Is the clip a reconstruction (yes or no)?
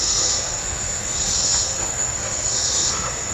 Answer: yes